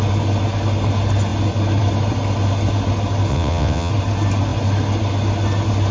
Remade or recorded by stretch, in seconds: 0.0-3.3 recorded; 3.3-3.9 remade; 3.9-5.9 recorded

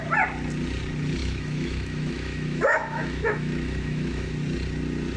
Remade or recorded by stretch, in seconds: 0.0-1.2 recorded; 1.2-4.3 remade; 4.3-5.2 recorded

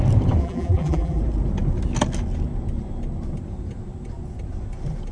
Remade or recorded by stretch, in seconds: 0.0-0.4 recorded; 0.4-1.2 remade; 1.2-5.1 recorded

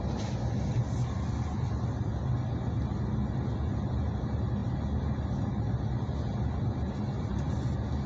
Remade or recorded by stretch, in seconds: 0.0-8.1 recorded

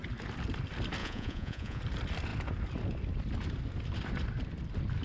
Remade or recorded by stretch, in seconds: 0.0-1.0 recorded; 1.0-1.8 remade; 1.8-5.0 recorded